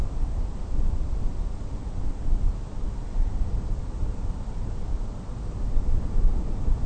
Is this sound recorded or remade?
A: recorded